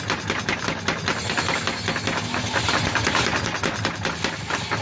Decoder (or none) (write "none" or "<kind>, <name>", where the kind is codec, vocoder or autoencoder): none